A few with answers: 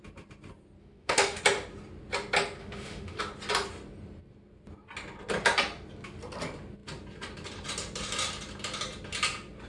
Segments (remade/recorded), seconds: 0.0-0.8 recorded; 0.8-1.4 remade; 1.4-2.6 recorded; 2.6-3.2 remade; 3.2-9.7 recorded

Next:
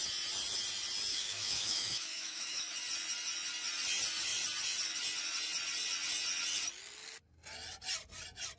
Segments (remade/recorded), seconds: 0.0-1.1 recorded; 1.1-2.6 remade; 2.6-8.6 recorded

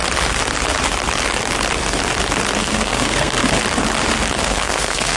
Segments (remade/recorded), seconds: 0.0-2.6 recorded; 2.6-3.4 remade; 3.4-4.4 recorded; 4.4-5.2 remade

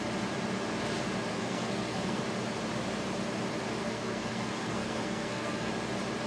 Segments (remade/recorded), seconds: 0.0-1.3 recorded; 1.3-2.2 remade; 2.2-3.8 recorded; 3.8-5.7 remade; 5.7-6.3 recorded

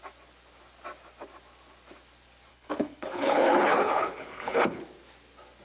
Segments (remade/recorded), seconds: 0.0-2.5 recorded; 2.5-4.8 remade; 4.8-5.6 recorded

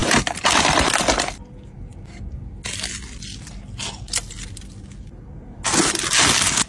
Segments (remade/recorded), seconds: 0.0-0.5 remade; 0.5-6.7 recorded